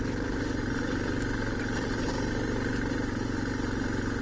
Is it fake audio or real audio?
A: real